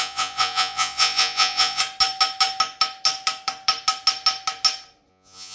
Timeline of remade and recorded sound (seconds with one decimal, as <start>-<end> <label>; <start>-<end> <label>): 0.0-1.8 remade; 1.8-5.1 recorded; 5.1-5.5 remade

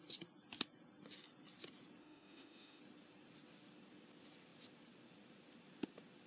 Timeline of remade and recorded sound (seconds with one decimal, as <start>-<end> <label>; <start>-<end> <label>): 0.0-2.0 recorded; 2.0-2.8 remade; 2.8-6.3 recorded

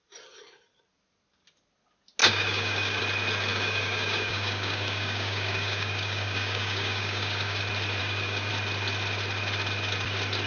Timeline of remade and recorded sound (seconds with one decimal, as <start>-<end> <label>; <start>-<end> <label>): 0.0-2.2 recorded; 2.2-3.0 remade; 3.0-3.5 recorded; 3.5-7.6 remade; 7.6-8.0 recorded; 8.0-8.5 remade; 8.5-10.5 recorded

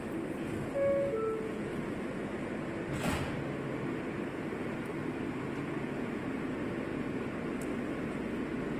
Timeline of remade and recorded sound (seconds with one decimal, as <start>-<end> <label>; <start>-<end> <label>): 0.0-8.8 recorded

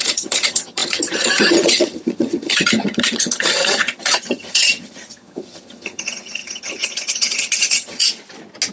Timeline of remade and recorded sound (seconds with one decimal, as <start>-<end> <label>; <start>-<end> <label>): 0.0-8.0 remade; 8.0-8.7 recorded

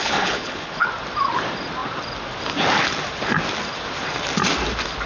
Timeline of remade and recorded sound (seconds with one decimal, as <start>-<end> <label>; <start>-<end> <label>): 0.0-0.9 remade; 0.9-5.1 recorded

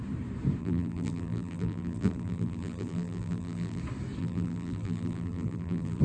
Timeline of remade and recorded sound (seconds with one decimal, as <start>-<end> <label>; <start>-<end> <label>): 0.0-0.6 recorded; 0.6-3.8 remade; 3.8-4.2 recorded; 4.2-6.0 remade